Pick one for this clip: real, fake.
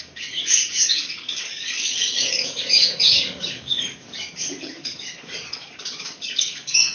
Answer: fake